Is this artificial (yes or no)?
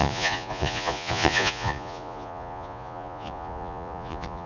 yes